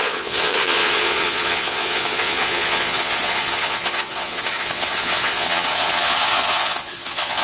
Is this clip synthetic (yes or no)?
yes